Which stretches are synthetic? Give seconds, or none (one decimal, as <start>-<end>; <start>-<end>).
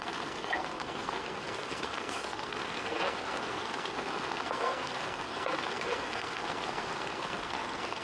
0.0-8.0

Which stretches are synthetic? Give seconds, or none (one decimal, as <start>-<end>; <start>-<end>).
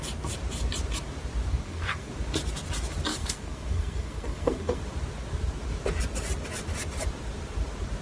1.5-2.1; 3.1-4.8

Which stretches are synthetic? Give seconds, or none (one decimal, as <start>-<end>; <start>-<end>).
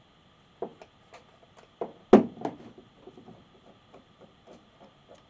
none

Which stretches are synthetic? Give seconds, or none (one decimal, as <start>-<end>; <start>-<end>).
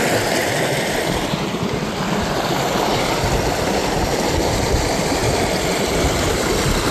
none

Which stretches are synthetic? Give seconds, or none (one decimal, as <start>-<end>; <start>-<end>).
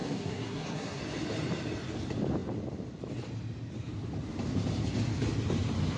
0.0-1.0